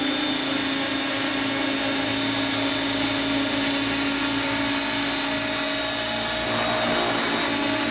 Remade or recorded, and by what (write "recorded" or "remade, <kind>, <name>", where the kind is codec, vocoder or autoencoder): recorded